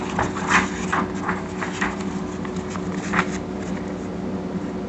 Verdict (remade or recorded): recorded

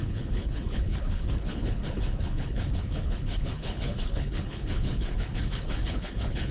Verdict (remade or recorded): remade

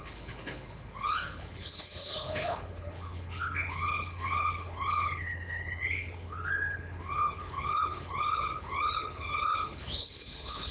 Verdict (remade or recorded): remade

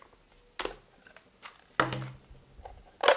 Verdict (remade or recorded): recorded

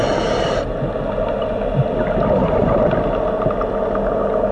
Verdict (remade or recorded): recorded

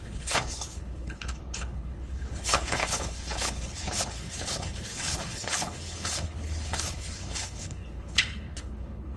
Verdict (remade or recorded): remade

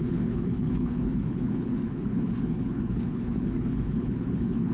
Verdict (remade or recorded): remade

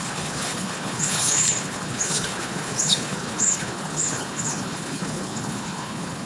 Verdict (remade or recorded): remade